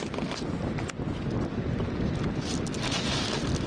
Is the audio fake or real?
real